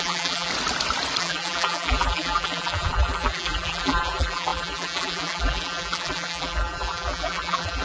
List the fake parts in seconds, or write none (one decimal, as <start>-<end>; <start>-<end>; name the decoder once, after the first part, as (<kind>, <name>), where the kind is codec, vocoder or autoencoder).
0.0-0.5 (vocoder, BigVGAN v2); 1.2-7.8